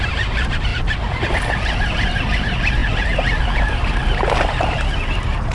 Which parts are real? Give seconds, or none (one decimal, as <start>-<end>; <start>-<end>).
0.7-1.5